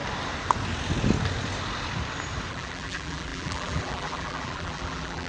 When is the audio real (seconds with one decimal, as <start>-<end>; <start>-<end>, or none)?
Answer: 0.0-2.5